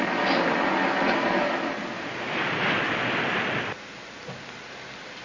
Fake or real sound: real